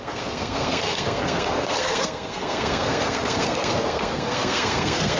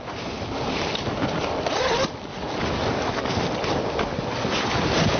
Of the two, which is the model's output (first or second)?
first